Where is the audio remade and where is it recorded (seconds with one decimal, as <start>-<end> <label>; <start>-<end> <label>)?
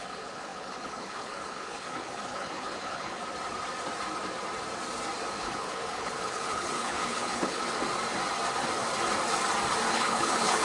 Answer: 0.0-3.2 remade; 3.2-5.4 recorded; 5.4-7.6 remade; 7.6-9.9 recorded; 9.9-10.6 remade